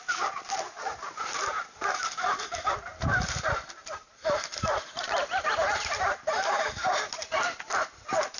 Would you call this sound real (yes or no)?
yes